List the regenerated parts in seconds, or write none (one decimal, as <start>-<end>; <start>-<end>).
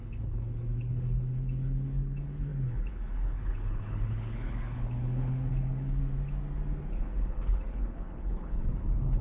0.0-6.0; 6.9-9.2